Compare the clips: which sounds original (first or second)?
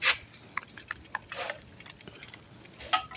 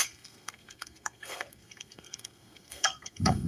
first